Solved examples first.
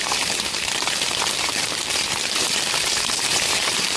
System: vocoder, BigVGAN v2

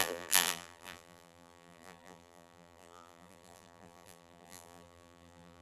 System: vocoder, BigVGAN v2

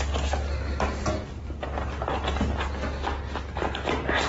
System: none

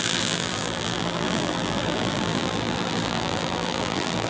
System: vocoder, BigVGAN v2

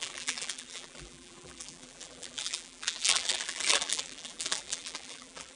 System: vocoder, BigVGAN v2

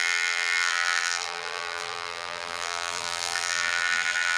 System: vocoder, BigVGAN v2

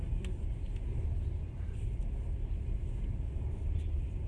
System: vocoder, BigVGAN v2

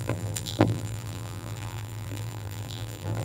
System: vocoder, BigVGAN v2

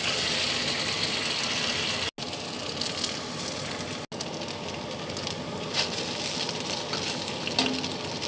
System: none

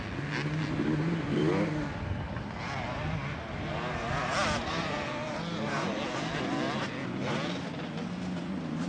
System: none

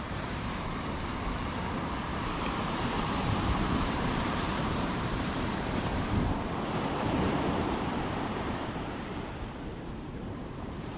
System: vocoder, BigVGAN v2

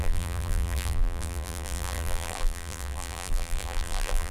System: vocoder, BigVGAN v2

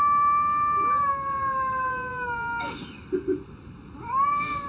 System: none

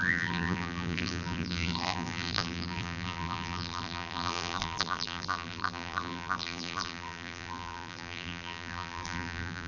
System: vocoder, BigVGAN v2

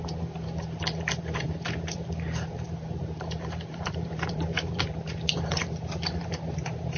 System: vocoder, BigVGAN v2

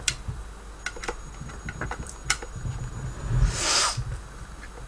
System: none